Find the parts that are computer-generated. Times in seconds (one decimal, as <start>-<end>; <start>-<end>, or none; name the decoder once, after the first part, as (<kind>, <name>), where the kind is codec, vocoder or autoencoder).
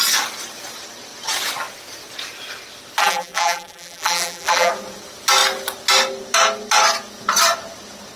3.0-4.7 (vocoder, BigVGAN v2)